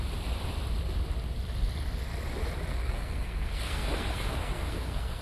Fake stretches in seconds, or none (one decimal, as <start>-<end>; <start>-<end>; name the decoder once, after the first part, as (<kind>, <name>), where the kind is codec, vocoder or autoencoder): 2.7-5.2 (codec, SNAC)

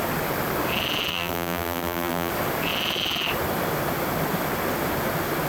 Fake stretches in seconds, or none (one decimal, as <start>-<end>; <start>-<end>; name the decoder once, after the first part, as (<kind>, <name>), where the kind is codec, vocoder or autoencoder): 1.1-2.3 (vocoder, BigVGAN v2)

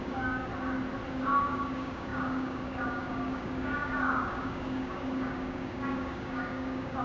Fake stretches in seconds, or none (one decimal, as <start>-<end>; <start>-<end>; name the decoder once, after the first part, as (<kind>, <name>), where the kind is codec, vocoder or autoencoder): 0.0-0.5 (codec, DAC); 1.1-7.0